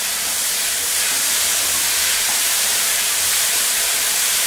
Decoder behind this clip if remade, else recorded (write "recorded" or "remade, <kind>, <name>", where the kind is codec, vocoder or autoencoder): remade, vocoder, BigVGAN v2